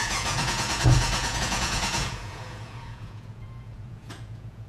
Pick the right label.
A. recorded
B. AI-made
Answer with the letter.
B